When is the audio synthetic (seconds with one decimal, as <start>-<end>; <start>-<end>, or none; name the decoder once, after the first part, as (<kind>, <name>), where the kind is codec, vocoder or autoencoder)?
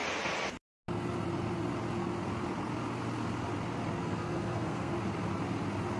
4.0-4.9 (codec, SNAC)